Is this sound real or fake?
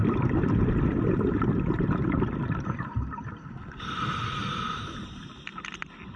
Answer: real